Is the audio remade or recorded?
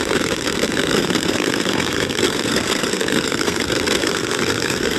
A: remade